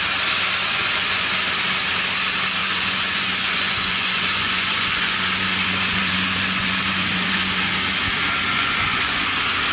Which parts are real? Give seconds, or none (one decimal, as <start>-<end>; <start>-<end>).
0.0-0.6; 1.3-2.6; 7.7-8.5; 9.2-9.7